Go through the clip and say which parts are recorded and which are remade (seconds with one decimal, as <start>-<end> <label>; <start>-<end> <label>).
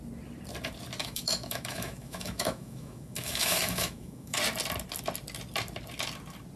0.0-1.0 recorded; 1.0-4.4 remade; 4.4-6.6 recorded